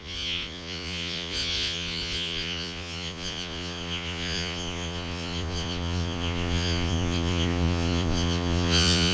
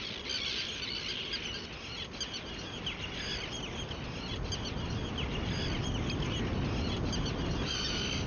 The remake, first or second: first